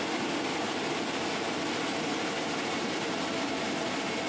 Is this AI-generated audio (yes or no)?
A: no